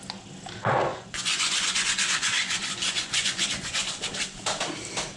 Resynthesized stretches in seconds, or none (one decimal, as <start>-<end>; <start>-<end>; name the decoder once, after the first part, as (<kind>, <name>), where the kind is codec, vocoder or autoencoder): 0.9-4.0 (vocoder, Vocos)

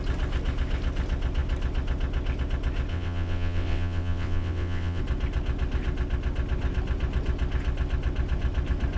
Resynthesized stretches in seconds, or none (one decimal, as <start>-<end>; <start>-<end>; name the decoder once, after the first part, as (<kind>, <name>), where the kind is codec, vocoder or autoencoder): 2.9-5.0 (vocoder, WaveNeXt)